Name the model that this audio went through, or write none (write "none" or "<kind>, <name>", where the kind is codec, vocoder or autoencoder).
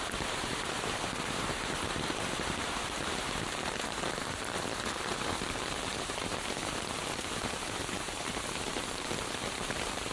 vocoder, BigVGAN v2